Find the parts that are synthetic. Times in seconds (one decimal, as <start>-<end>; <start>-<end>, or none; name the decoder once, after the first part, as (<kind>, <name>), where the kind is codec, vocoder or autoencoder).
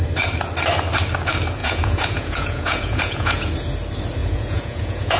1.6-3.5 (vocoder, Vocos); 4.2-5.2